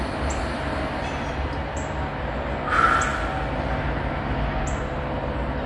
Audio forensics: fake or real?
real